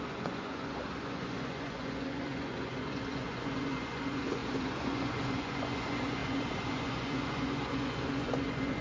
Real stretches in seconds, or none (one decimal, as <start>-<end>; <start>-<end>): none